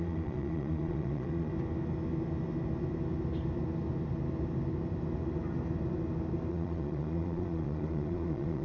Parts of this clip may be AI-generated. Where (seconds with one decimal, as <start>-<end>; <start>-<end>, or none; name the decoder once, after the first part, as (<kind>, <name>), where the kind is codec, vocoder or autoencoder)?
0.0-1.5 (vocoder, Vocos); 6.5-8.6